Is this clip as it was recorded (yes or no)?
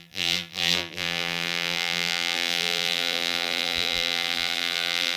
no